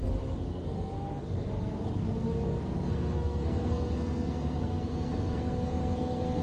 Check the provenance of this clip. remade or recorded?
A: remade